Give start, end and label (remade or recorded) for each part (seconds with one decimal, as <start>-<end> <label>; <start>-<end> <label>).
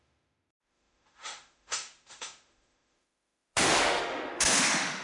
0.0-5.0 remade